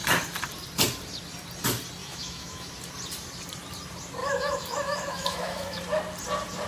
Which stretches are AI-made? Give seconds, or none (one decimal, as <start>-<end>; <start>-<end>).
2.0-2.7; 4.2-5.8